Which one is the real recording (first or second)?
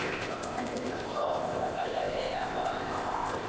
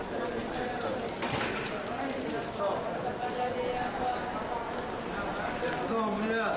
second